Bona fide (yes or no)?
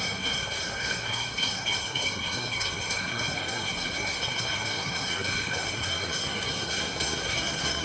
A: no